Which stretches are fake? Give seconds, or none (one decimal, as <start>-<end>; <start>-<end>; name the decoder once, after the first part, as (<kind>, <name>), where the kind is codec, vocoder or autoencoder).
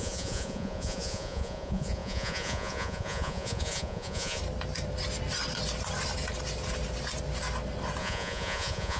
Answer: 0.0-4.4 (vocoder, Vocos); 8.0-9.0